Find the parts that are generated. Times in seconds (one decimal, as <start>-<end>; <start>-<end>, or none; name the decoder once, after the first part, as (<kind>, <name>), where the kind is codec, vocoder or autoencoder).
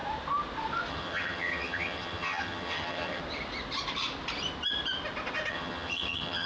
0.9-3.2 (vocoder, HiFi-GAN); 5.5-6.5